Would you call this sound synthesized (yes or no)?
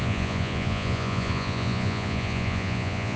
yes